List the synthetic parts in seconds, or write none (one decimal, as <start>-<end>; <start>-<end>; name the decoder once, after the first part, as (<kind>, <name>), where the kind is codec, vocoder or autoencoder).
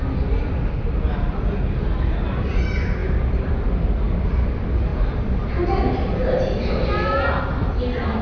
none